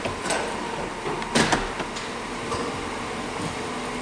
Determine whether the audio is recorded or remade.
recorded